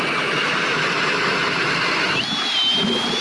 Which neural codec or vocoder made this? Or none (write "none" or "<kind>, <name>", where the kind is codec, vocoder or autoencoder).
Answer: none